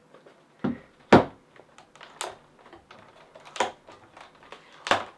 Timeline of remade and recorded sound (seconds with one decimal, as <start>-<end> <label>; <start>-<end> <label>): 0.0-5.2 recorded

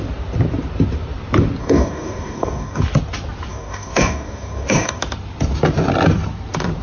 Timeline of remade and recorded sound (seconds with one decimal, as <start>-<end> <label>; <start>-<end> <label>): 0.0-1.6 recorded; 1.6-2.8 remade; 2.8-3.5 recorded; 3.5-5.0 remade; 5.0-6.8 recorded

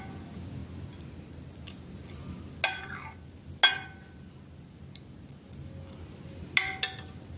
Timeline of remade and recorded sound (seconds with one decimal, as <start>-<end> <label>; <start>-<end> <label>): 0.0-7.4 recorded